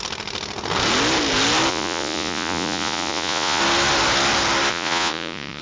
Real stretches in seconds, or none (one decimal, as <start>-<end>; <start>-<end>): 0.0-1.7; 3.6-4.7